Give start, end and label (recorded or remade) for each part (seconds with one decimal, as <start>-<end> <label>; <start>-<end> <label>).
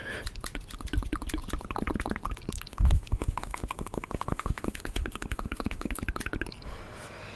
0.0-2.7 recorded; 2.7-6.0 remade; 6.0-7.4 recorded